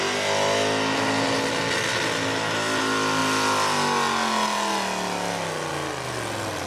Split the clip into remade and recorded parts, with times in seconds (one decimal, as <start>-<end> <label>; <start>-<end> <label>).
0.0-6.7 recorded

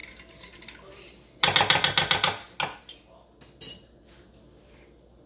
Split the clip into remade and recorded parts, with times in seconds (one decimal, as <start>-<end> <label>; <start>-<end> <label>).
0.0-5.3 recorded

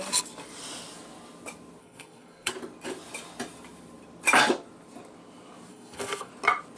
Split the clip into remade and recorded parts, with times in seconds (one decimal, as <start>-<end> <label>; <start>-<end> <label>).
0.0-1.8 recorded; 1.8-2.5 remade; 2.5-5.7 recorded; 5.7-6.3 remade; 6.3-6.8 recorded

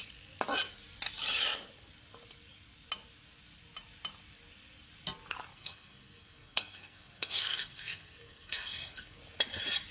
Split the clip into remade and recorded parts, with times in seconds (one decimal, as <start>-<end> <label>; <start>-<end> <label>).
0.0-5.5 recorded; 5.5-9.2 remade; 9.2-9.9 recorded

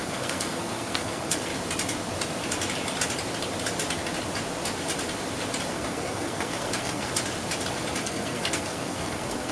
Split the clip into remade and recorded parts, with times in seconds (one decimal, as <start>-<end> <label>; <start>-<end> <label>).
0.0-1.5 remade; 1.5-5.7 recorded; 5.7-7.1 remade; 7.1-8.0 recorded; 8.0-9.5 remade

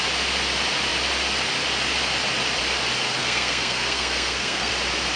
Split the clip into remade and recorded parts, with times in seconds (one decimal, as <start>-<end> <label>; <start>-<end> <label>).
0.0-3.2 recorded; 3.2-4.7 remade; 4.7-5.2 recorded